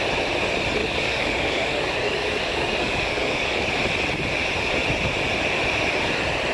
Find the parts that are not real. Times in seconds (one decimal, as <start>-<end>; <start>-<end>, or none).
0.8-3.7